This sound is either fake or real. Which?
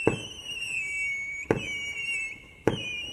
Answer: real